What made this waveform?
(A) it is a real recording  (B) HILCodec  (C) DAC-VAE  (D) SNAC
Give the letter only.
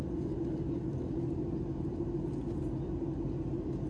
A